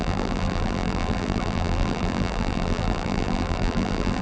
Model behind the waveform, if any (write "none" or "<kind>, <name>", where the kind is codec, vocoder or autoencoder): vocoder, BigVGAN v2